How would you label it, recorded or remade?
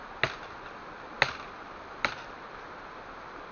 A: recorded